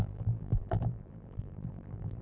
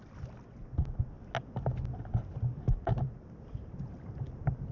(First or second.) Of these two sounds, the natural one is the second